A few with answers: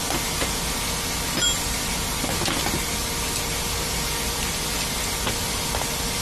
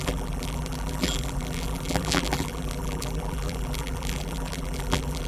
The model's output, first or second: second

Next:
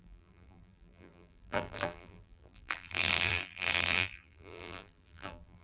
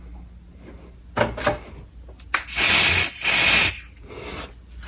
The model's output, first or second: first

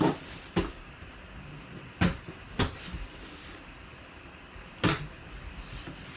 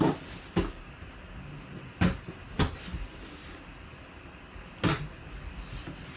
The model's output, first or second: first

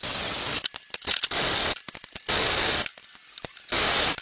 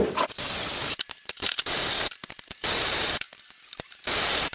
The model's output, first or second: second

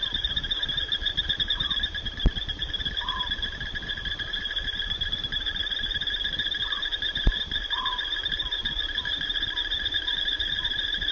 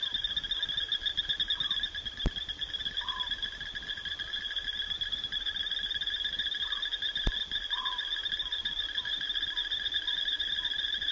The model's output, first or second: first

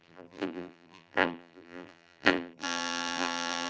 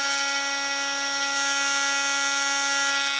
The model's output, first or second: first